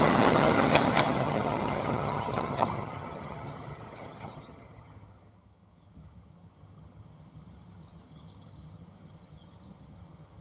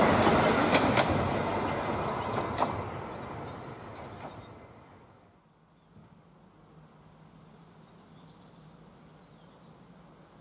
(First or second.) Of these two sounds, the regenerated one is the first